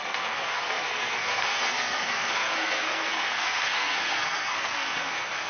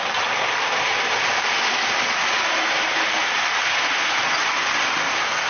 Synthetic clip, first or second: first